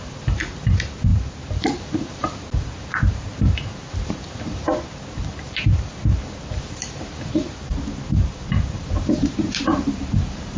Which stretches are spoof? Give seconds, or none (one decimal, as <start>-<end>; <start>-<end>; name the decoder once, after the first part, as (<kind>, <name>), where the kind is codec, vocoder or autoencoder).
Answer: 0.0-10.6 (vocoder, BigVGAN v2)